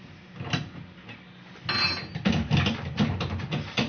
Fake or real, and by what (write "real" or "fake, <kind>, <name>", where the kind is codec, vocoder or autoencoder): real